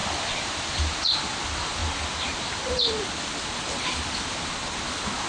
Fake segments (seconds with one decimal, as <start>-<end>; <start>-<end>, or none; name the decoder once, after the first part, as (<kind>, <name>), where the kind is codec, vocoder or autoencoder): none